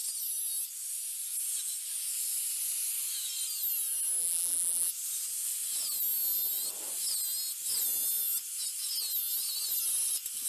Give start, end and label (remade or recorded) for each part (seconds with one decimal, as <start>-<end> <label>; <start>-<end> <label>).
0.0-4.2 recorded; 4.2-4.9 remade; 4.9-10.5 recorded